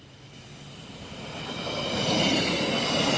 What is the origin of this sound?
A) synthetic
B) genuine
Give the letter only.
B